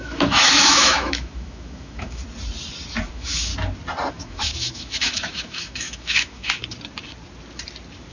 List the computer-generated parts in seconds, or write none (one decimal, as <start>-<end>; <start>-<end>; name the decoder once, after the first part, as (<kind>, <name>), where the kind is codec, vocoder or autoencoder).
0.0-2.2 (autoencoder, DAC-VAE); 3.1-3.5; 4.1-6.6